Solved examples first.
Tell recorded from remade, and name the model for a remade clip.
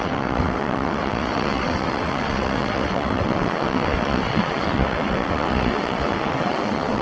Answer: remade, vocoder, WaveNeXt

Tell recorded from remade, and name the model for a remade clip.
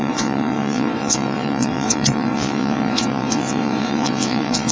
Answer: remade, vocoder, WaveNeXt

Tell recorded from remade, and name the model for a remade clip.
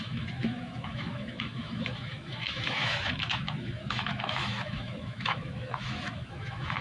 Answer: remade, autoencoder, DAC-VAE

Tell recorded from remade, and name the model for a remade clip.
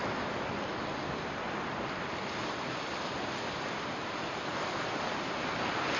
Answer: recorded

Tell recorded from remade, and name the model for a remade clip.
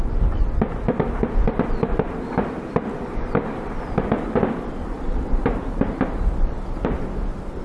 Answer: recorded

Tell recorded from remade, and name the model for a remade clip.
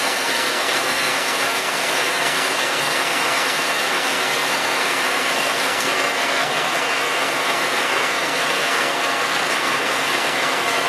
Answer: remade, codec, SNAC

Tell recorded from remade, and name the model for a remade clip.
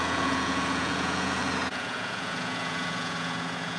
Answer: remade, vocoder, Vocos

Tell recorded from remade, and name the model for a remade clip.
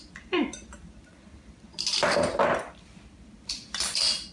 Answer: remade, vocoder, BigVGAN v2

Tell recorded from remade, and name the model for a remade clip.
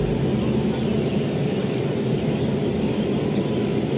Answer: recorded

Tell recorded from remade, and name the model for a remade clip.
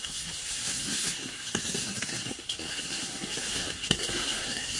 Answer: remade, codec, SNAC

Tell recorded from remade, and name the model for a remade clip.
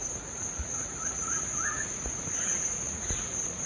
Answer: remade, vocoder, Vocos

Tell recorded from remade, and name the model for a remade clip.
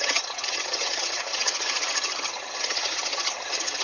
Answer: remade, vocoder, HiFi-GAN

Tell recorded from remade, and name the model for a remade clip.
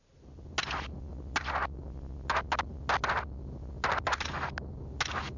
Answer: recorded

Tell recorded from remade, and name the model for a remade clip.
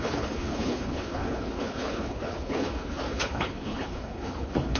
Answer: remade, codec, HILCodec